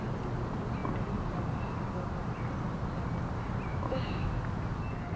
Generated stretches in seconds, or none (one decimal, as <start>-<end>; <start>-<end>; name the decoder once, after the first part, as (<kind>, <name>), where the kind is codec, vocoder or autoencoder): 3.7-4.3 (autoencoder, DAC-VAE)